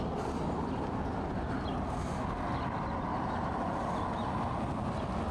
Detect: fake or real real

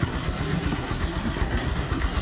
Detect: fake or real fake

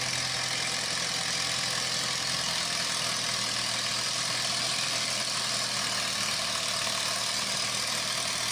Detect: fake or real real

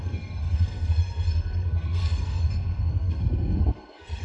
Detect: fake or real fake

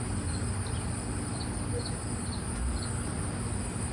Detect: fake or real real